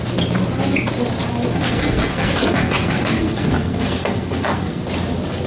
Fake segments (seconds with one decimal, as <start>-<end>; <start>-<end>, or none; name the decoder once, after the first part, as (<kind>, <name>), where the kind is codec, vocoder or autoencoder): 1.5-4.8 (codec, SNAC)